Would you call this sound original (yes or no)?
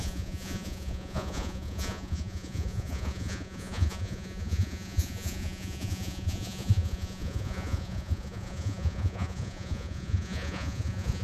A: no